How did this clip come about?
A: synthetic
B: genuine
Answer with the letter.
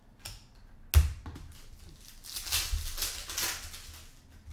B